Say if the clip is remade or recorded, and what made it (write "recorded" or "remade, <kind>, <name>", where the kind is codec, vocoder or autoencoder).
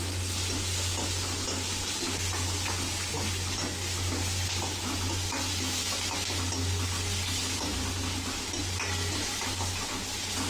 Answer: recorded